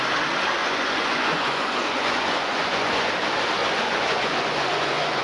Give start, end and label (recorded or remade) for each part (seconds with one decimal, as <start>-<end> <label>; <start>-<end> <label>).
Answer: 0.0-0.6 recorded; 0.6-3.1 remade; 3.1-3.6 recorded; 3.6-5.2 remade